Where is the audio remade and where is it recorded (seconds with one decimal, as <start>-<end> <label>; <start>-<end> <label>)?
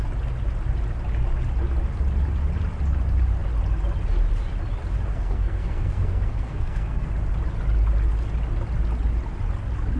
0.0-5.1 recorded; 5.1-7.1 remade; 7.1-10.0 recorded